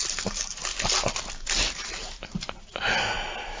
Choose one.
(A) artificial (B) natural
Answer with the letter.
B